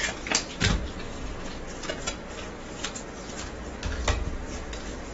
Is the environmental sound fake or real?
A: real